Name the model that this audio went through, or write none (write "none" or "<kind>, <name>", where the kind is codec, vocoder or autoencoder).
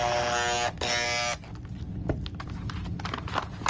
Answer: none